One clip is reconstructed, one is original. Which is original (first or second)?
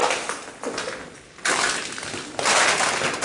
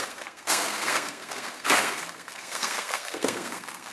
first